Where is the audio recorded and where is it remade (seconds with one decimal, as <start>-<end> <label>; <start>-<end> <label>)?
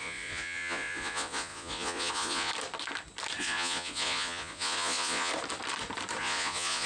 0.0-2.5 remade; 2.5-3.4 recorded; 3.4-5.3 remade; 5.3-6.2 recorded; 6.2-6.9 remade